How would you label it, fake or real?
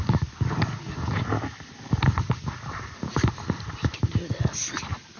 real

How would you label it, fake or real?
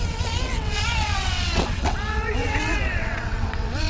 fake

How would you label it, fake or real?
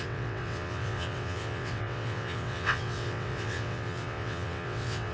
fake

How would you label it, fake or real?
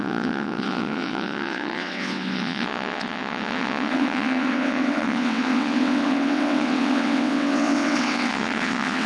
fake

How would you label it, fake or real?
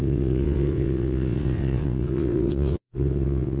fake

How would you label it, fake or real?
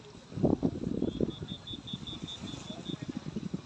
real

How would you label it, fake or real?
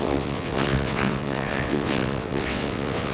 fake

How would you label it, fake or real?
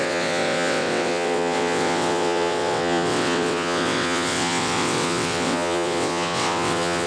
fake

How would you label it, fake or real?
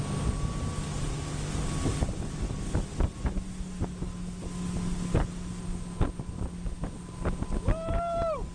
real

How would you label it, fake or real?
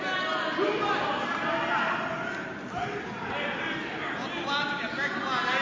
real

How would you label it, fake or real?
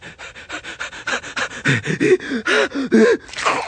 real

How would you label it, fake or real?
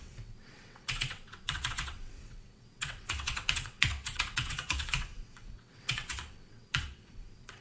fake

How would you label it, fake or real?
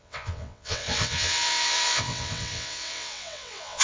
fake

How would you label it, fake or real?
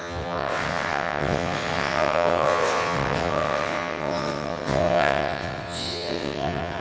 fake